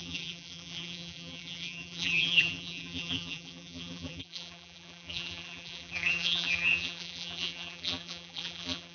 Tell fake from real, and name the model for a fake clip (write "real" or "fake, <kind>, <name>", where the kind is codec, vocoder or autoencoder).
fake, vocoder, BigVGAN v2